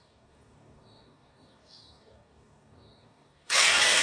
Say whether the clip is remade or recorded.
remade